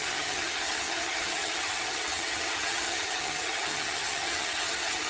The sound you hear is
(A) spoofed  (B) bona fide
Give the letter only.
A